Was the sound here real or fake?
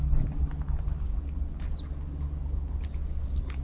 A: real